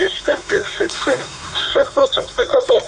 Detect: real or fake fake